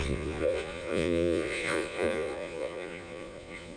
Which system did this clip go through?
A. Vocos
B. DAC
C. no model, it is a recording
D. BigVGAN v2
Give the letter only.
A